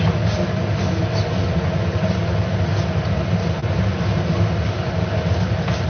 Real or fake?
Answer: real